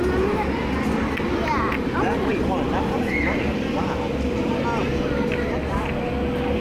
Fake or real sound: real